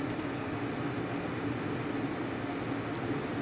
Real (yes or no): yes